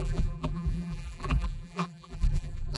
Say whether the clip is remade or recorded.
remade